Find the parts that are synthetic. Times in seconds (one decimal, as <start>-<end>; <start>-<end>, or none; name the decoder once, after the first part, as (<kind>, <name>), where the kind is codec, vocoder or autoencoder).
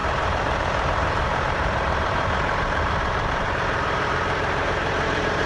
0.0-5.5 (vocoder, BigVGAN v2)